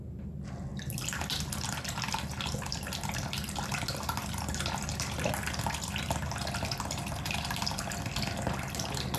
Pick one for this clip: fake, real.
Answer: real